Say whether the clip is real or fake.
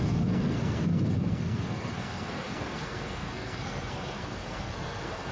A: fake